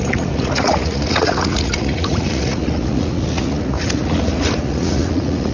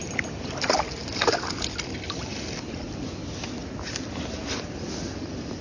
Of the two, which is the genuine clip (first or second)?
second